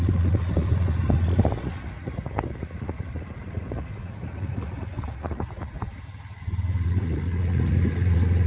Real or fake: fake